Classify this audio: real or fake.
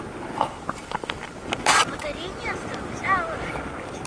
real